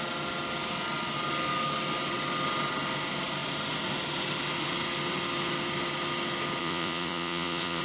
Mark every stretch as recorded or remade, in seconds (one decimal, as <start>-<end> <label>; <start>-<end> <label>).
0.0-6.6 recorded; 6.6-7.8 remade